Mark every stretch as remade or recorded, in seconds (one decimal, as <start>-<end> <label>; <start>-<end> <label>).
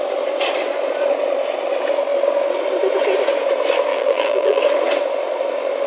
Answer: 0.0-3.9 recorded; 3.9-4.6 remade; 4.6-5.9 recorded